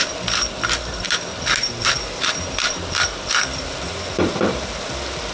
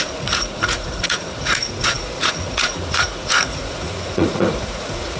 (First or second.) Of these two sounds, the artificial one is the second